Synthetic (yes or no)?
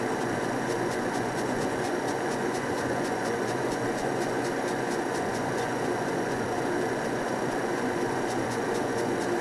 yes